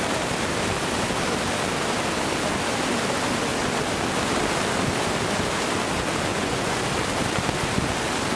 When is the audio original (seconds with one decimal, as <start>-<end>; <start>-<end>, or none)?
0.0-6.3; 6.8-8.4